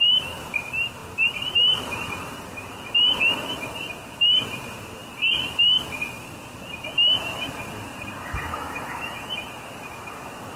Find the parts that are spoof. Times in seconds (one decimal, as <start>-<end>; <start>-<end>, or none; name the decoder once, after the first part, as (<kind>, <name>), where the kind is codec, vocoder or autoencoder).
8.5-9.3 (autoencoder, DAC-VAE)